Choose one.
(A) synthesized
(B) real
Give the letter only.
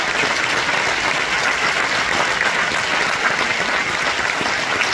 B